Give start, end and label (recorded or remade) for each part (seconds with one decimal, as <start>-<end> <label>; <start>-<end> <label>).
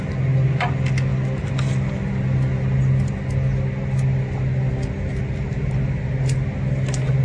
0.0-7.2 recorded